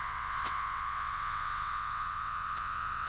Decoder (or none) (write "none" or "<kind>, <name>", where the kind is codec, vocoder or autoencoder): vocoder, WaveNeXt